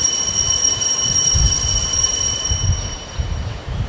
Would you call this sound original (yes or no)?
yes